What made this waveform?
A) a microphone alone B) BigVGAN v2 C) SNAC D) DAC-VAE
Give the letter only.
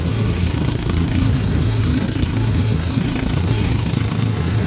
C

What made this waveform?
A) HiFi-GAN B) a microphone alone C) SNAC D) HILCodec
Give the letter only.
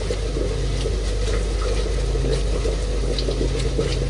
B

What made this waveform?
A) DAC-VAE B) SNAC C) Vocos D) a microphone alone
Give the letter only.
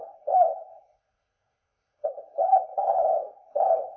B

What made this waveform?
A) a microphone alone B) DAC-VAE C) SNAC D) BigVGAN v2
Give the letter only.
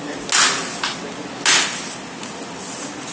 A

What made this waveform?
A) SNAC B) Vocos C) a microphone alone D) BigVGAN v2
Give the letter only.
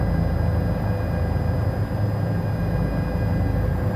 C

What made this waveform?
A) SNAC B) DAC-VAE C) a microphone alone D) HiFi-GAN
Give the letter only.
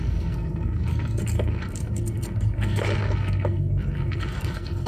A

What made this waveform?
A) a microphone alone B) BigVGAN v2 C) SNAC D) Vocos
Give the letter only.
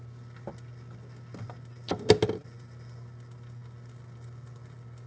A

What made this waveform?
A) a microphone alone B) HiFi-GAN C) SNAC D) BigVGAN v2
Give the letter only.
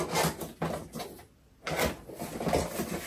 A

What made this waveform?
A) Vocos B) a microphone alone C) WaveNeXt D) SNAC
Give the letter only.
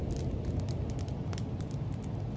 B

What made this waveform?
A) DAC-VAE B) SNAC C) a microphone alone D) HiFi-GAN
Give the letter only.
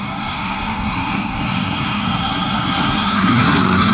B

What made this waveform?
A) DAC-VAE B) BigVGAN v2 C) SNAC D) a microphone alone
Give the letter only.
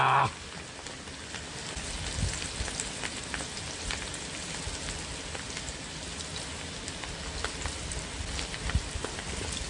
D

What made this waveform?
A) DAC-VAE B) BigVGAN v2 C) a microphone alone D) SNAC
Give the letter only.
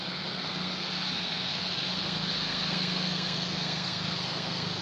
D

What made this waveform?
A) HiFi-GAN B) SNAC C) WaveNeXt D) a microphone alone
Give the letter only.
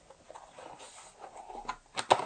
D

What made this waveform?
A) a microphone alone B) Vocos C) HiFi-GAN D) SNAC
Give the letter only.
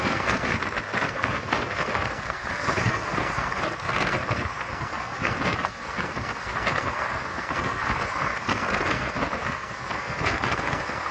D